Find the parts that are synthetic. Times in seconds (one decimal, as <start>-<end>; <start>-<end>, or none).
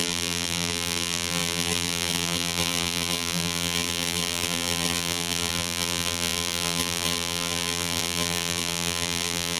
0.0-9.6